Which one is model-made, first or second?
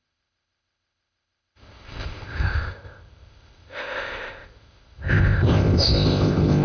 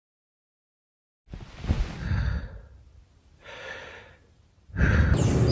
first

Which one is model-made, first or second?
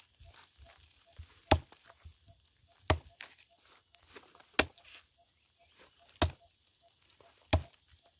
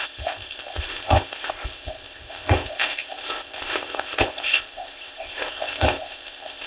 second